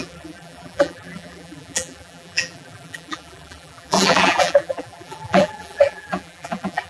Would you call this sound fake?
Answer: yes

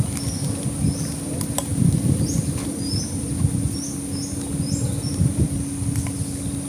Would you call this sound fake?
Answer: no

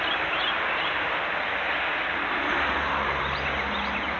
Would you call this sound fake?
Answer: no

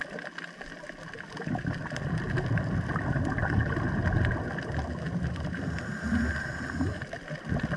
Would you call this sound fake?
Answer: no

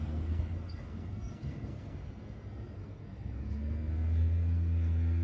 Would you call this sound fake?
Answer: yes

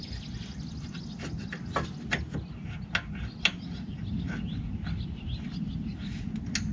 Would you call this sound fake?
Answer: no